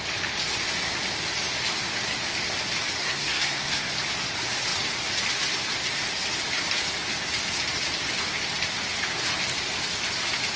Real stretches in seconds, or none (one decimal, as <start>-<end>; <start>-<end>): 0.0-3.0; 3.9-10.6